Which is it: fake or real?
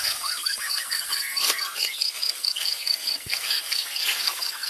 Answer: fake